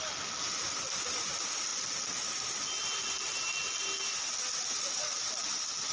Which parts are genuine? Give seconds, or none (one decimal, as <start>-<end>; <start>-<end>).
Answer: 0.0-5.9